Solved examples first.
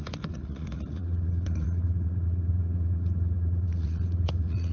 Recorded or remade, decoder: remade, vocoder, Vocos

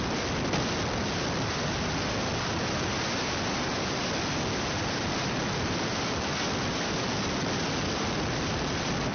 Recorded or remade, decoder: recorded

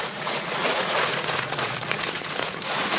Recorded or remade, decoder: remade, vocoder, Vocos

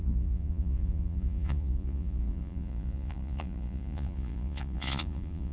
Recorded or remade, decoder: remade, vocoder, Vocos